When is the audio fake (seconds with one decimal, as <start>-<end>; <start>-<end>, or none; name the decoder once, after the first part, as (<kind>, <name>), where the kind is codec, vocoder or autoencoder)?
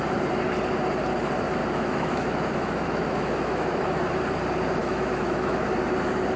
1.6-3.8 (autoencoder, DAC-VAE); 4.8-5.7